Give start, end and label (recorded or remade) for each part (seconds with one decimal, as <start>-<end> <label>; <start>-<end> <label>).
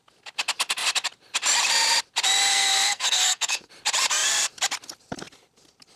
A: 0.0-2.5 recorded; 2.5-3.7 remade; 3.7-6.0 recorded